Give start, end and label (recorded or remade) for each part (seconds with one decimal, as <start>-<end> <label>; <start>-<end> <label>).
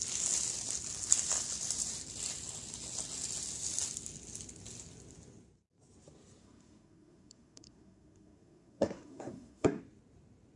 0.0-6.4 recorded; 6.4-9.8 remade; 9.8-10.6 recorded